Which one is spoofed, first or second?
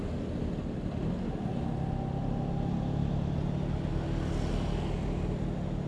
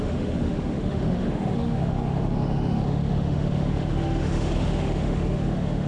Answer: second